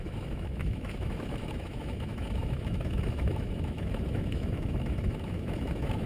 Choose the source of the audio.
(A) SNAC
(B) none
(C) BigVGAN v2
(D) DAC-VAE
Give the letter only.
D